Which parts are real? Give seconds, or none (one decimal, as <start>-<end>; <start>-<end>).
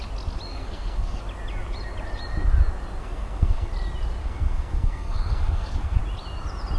0.0-0.5; 1.2-3.0; 3.7-4.2; 6.0-6.8